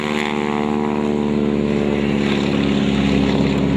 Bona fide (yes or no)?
yes